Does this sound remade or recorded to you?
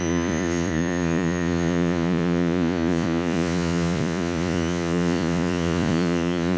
remade